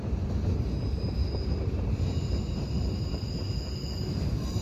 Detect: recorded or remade recorded